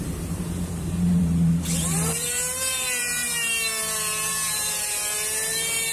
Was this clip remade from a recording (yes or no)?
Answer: yes